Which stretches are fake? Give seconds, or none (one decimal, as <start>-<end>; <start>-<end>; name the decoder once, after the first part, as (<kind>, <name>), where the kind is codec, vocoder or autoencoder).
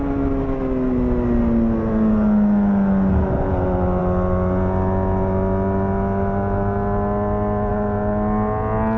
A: none